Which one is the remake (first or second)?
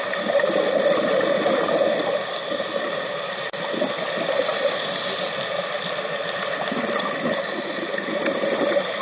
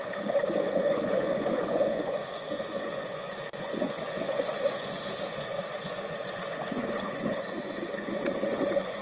second